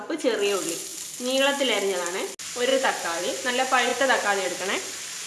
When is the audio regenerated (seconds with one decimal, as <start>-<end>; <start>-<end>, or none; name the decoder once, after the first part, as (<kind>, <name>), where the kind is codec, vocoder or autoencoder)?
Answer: none